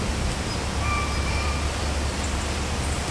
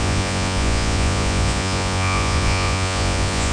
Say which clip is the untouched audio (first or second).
first